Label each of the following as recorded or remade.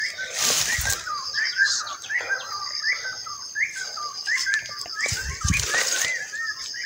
recorded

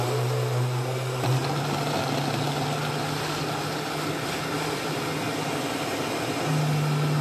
recorded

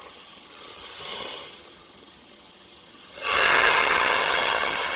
remade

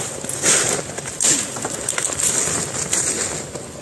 recorded